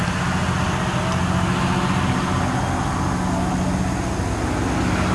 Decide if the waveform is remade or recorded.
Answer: recorded